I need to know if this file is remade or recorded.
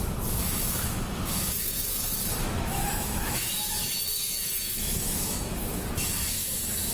remade